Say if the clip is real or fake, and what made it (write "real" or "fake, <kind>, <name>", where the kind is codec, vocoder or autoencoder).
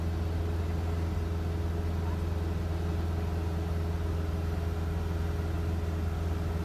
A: real